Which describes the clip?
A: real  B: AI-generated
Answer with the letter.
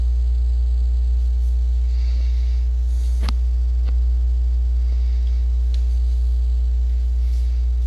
A